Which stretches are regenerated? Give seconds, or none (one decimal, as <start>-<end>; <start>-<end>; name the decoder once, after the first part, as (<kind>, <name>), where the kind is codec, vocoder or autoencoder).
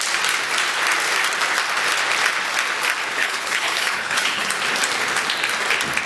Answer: 3.2-4.5 (codec, HILCodec)